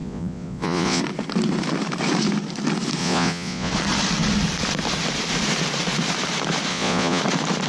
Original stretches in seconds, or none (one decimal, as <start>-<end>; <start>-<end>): 1.0-3.0; 3.7-6.7; 7.2-7.7